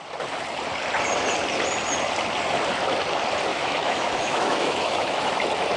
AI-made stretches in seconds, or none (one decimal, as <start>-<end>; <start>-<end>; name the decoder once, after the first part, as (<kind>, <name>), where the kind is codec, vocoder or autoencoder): 3.5-5.3 (autoencoder, DAC-VAE)